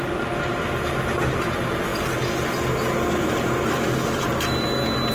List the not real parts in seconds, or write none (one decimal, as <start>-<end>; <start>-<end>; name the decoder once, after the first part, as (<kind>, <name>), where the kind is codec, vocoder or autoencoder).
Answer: none